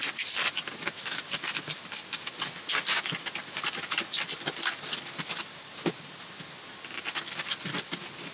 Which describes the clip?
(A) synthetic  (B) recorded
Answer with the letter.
B